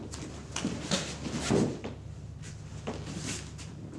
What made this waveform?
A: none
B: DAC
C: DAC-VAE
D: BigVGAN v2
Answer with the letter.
A